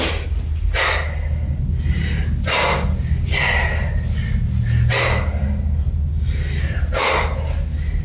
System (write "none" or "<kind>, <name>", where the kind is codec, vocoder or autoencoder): none